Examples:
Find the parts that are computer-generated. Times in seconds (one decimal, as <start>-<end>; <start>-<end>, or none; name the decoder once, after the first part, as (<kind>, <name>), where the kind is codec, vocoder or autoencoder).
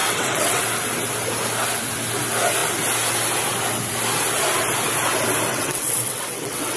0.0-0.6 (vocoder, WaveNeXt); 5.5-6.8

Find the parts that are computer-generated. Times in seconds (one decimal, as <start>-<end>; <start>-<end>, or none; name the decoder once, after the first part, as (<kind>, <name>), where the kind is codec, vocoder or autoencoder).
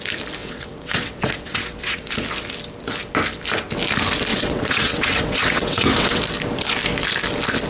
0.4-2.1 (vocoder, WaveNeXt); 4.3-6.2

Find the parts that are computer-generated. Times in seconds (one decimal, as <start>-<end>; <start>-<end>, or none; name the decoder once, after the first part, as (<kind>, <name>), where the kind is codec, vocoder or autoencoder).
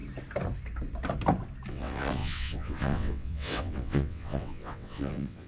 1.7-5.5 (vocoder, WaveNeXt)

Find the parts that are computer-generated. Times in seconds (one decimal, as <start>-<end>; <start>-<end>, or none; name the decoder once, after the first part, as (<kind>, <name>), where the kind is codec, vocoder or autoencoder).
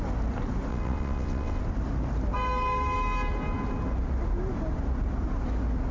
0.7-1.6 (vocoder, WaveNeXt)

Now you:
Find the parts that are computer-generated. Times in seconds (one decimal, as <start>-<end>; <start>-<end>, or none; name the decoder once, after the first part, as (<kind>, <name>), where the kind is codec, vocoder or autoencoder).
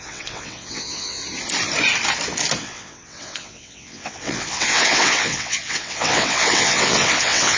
0.0-1.2 (vocoder, WaveNeXt); 2.6-7.6